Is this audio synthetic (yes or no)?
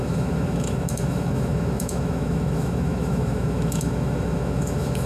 yes